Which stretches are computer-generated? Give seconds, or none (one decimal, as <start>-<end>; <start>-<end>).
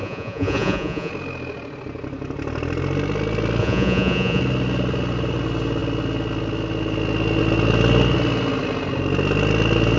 0.0-1.1; 3.6-4.4